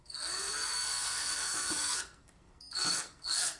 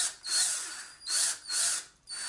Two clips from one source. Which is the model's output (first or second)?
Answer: first